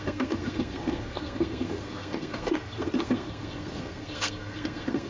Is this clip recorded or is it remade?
remade